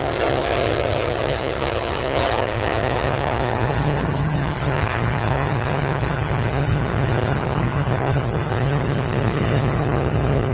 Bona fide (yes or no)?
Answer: no